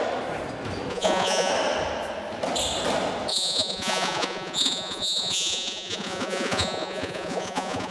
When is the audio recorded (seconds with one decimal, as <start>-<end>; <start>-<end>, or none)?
0.0-0.9; 1.5-3.3